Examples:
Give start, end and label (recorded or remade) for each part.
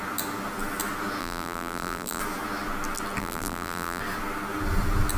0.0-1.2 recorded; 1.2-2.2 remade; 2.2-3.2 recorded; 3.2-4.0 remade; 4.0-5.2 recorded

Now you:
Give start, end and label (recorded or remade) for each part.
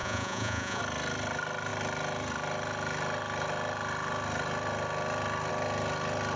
0.0-0.8 remade; 0.8-6.4 recorded